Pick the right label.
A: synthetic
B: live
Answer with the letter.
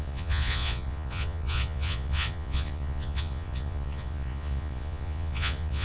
A